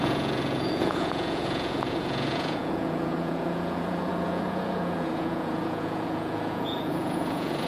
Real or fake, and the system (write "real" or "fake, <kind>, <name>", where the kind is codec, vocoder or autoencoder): fake, vocoder, Vocos